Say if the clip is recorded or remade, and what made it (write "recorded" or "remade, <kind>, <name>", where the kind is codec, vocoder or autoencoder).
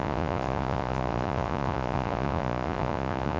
remade, vocoder, Vocos